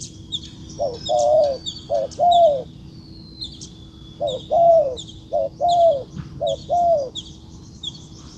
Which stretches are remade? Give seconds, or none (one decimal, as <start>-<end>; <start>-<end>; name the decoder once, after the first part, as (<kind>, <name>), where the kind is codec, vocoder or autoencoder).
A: 0.0-0.6 (vocoder, BigVGAN v2); 1.1-2.8; 4.7-6.6; 7.3-8.4